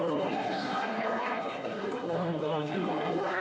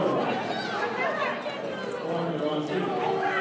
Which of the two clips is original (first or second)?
second